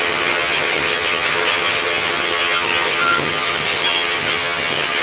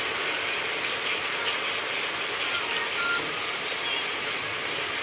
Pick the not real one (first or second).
first